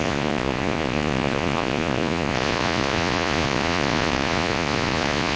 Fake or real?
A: fake